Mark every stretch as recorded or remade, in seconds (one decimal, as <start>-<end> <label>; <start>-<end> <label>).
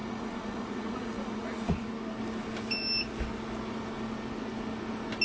0.0-1.9 remade; 1.9-5.2 recorded